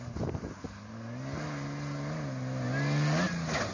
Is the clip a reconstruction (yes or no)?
no